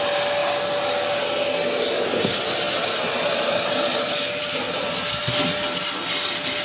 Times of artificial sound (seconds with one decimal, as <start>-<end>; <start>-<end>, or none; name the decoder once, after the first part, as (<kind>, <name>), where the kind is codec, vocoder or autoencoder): none